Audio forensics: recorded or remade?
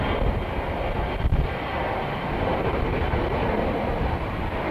recorded